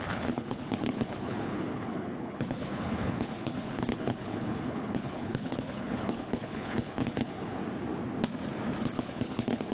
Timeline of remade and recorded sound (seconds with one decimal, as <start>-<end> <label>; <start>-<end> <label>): 0.0-7.6 remade; 7.6-8.8 recorded; 8.8-9.7 remade

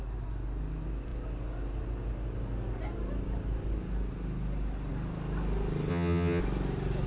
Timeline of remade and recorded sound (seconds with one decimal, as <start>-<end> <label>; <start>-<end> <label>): 0.0-5.9 recorded; 5.9-6.4 remade; 6.4-7.1 recorded

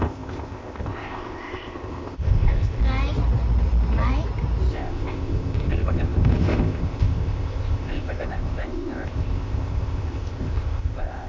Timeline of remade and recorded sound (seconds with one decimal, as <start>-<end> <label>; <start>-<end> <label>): 0.0-2.8 remade; 2.8-4.7 recorded; 4.7-11.3 remade

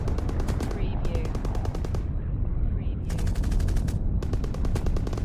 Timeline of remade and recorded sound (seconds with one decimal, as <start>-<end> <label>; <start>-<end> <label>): 0.0-5.2 recorded

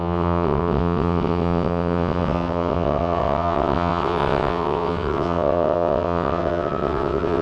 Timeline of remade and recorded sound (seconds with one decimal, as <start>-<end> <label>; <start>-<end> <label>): 0.0-7.4 remade

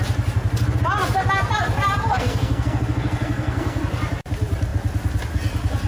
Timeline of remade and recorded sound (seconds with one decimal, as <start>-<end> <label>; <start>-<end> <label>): 0.0-2.1 recorded; 2.1-3.8 remade; 3.8-5.9 recorded

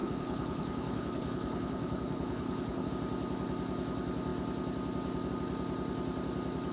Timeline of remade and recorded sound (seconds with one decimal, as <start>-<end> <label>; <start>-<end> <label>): 0.0-2.9 remade; 2.9-6.7 recorded

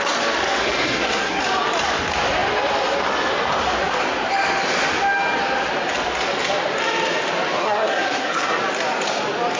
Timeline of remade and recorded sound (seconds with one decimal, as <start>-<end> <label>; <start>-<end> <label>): 0.0-0.6 recorded; 0.6-1.4 remade; 1.4-7.6 recorded; 7.6-8.6 remade; 8.6-9.6 recorded